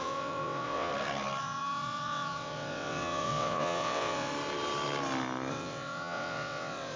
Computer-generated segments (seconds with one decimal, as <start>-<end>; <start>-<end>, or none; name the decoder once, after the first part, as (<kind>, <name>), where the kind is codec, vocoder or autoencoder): 0.0-0.9 (vocoder, WaveNeXt); 1.4-4.3; 5.5-7.0